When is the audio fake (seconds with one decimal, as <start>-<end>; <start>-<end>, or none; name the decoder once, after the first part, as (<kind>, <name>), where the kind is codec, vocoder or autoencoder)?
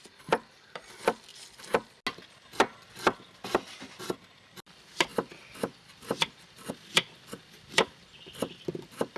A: none